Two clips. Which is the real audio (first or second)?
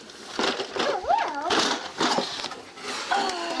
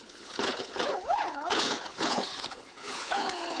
first